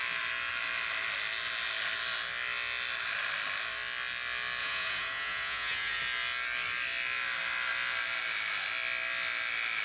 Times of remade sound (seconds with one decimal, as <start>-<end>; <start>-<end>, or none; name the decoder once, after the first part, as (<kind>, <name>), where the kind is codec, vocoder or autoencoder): 4.6-6.0 (vocoder, Vocos)